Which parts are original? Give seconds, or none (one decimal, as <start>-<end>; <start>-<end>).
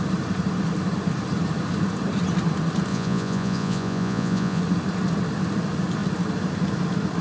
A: 0.0-2.9; 4.6-7.2